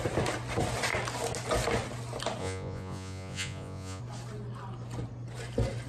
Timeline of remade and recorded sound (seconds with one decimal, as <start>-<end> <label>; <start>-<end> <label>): 0.0-2.4 recorded; 2.4-4.0 remade; 4.0-5.9 recorded